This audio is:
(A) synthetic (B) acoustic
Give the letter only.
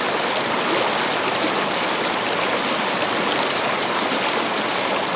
B